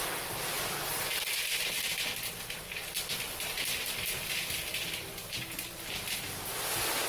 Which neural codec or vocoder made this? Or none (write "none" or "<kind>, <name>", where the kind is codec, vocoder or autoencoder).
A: none